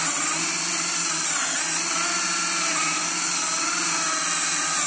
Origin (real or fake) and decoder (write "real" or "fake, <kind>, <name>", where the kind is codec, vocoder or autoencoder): real